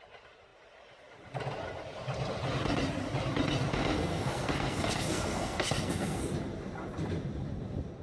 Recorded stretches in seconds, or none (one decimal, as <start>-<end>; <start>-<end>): 0.0-3.7; 6.3-8.0